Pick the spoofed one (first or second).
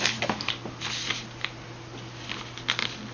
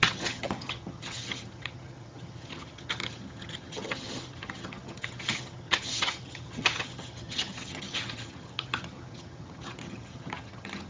second